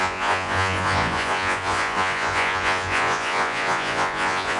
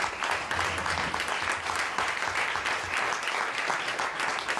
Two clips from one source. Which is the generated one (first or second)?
first